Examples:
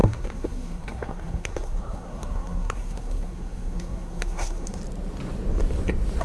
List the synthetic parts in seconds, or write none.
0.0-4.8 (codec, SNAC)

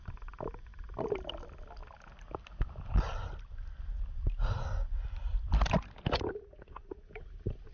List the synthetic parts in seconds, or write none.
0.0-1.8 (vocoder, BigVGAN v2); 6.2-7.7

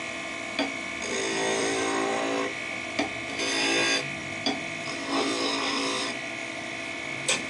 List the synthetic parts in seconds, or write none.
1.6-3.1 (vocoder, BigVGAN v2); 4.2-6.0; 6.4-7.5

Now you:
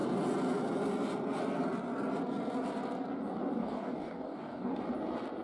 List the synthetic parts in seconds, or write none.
3.6-4.8 (codec, DAC)